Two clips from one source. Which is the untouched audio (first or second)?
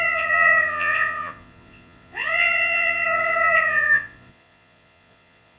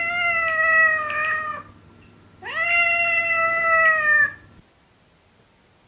second